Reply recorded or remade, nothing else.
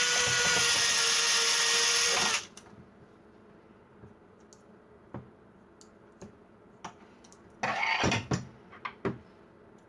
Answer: recorded